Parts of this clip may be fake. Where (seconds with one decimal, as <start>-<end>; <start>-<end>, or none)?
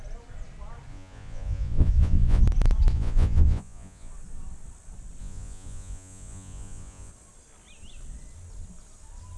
0.9-2.4; 2.9-4.1; 5.2-7.1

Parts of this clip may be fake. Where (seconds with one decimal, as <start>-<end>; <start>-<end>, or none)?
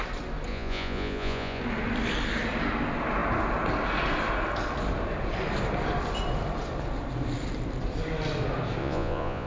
0.5-1.6; 8.8-9.5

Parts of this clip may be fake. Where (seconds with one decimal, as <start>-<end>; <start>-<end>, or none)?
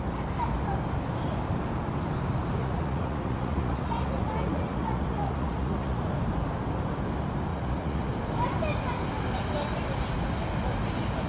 2.6-6.0; 7.5-8.1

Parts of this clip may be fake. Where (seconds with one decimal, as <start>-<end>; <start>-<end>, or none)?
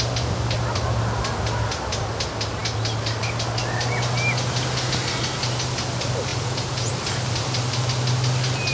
6.3-6.9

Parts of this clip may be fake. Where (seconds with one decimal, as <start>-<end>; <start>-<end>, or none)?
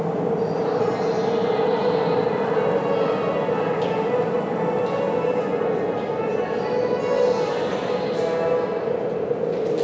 none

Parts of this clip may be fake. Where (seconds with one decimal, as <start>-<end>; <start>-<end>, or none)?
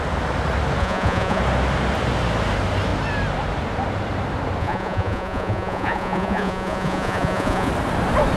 0.8-1.4; 4.6-7.7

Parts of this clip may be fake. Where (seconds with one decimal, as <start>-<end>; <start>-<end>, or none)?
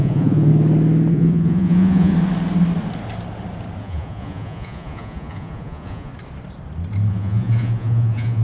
0.0-0.5; 1.1-2.1; 3.8-6.1; 7.1-8.4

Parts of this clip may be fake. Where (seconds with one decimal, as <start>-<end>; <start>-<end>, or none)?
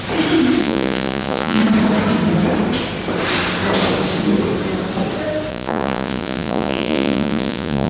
0.6-1.6; 5.5-7.9